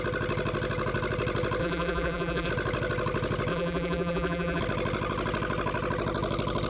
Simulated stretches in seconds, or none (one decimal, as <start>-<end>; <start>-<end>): 1.6-2.5; 3.5-4.6